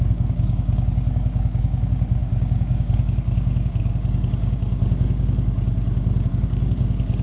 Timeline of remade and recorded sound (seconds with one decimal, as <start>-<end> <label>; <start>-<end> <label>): 0.0-7.2 remade